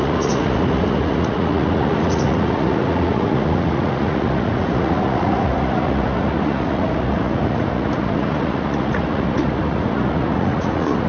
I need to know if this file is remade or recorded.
remade